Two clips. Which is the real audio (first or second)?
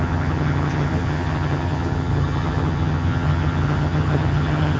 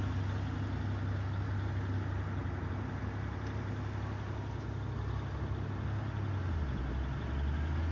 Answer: second